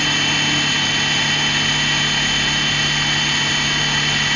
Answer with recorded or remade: recorded